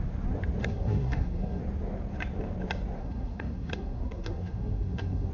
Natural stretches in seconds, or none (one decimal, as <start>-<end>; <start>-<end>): 0.0-0.6; 1.6-3.0